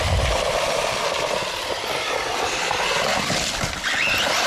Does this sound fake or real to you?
real